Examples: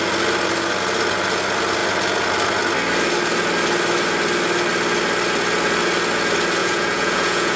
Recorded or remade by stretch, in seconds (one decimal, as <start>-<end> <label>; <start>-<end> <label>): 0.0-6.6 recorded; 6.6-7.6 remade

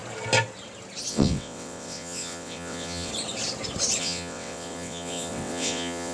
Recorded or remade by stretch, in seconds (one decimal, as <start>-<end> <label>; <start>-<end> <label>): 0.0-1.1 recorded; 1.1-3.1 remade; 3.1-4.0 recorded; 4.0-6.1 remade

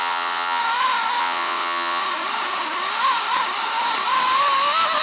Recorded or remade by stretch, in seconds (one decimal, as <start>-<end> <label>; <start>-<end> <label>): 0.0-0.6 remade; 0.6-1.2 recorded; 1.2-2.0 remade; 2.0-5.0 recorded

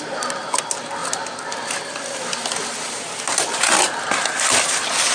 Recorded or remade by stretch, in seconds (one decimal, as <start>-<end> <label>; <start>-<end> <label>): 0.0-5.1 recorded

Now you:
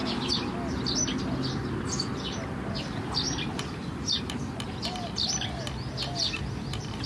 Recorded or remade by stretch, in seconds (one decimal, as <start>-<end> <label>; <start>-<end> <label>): 0.0-7.1 recorded

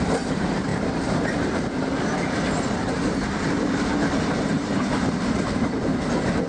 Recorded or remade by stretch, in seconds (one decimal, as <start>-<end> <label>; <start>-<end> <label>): 0.0-0.7 remade; 0.7-4.4 recorded; 4.4-5.9 remade; 5.9-6.5 recorded

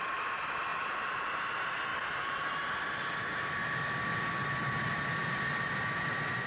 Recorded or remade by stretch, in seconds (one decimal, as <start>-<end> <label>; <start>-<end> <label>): 0.0-0.7 recorded; 0.7-1.4 remade; 1.4-1.9 recorded; 1.9-2.5 remade; 2.5-6.5 recorded